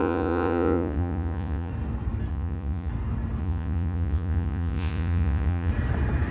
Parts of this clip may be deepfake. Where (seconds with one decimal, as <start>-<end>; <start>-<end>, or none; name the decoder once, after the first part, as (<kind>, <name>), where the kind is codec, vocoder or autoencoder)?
0.0-1.7 (vocoder, Vocos); 2.3-2.9; 3.4-5.7